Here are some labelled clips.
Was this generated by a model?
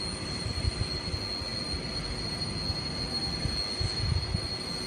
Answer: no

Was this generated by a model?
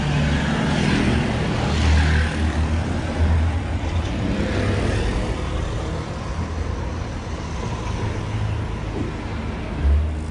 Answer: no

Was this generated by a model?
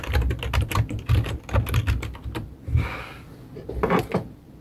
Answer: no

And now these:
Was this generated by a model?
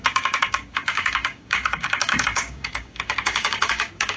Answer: yes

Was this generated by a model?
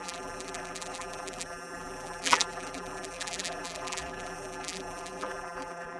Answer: yes